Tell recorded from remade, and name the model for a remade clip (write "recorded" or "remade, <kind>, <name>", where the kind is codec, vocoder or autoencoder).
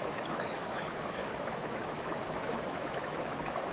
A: remade, autoencoder, DAC-VAE